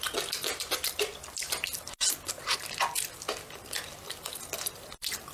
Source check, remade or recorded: recorded